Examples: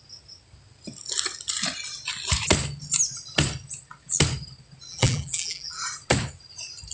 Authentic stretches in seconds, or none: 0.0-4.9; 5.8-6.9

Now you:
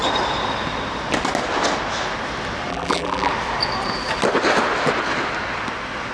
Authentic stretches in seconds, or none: 0.0-2.7; 3.3-6.1

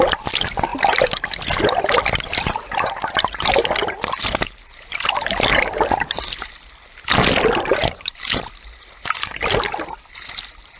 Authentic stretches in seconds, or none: 0.0-2.3; 3.5-7.7; 8.4-10.8

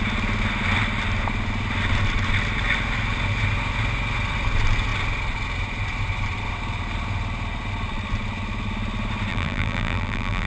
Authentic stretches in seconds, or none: 0.0-9.3